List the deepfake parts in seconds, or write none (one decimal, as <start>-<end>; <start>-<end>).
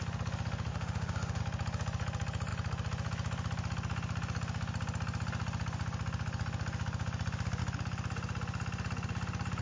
0.7-1.4